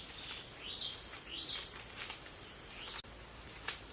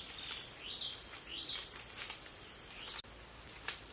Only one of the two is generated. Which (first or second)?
second